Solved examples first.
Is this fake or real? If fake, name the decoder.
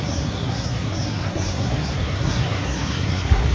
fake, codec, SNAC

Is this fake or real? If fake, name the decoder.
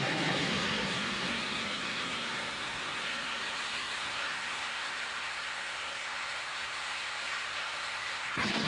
fake, codec, SNAC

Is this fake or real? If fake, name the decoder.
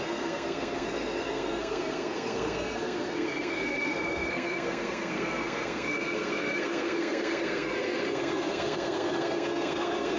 fake, codec, SNAC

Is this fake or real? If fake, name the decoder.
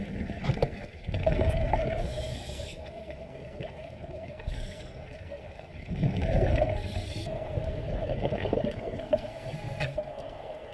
fake, codec, SNAC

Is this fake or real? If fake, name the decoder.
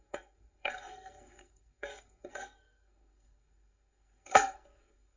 fake, codec, SNAC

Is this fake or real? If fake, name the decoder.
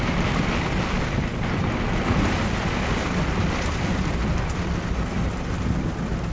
real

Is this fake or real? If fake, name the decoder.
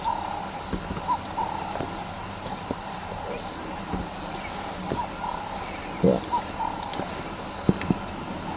real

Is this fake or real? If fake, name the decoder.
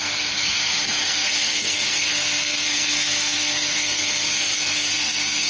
fake, codec, SNAC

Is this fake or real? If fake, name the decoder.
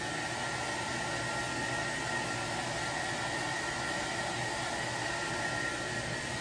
real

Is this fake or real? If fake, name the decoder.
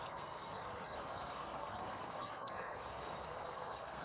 fake, codec, SNAC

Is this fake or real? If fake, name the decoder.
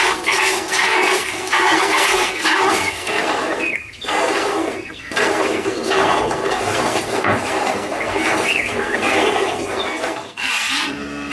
fake, codec, SNAC